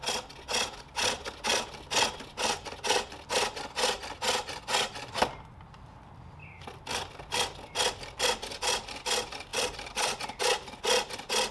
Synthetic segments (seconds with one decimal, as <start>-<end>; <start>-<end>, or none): none